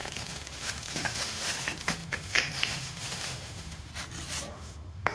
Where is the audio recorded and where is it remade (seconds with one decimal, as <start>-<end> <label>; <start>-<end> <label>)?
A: 0.0-3.9 remade; 3.9-4.5 recorded; 4.5-5.1 remade